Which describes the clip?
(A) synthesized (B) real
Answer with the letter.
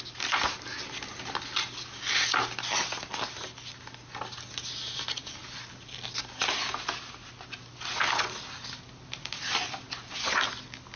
B